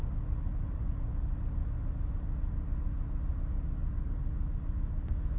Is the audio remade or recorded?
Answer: recorded